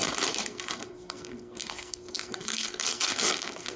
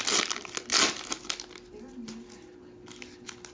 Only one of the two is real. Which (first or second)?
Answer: second